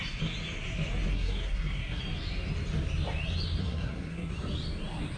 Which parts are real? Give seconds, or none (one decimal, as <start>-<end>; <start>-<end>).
0.0-1.1; 2.0-3.6; 4.3-5.2